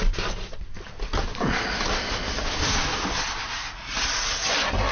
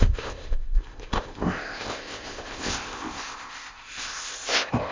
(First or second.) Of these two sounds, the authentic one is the first